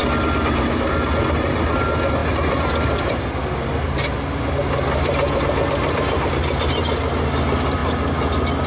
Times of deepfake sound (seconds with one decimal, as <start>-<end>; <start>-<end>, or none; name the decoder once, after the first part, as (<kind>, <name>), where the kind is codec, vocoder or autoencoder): none